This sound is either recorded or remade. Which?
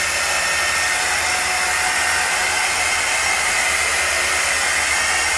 recorded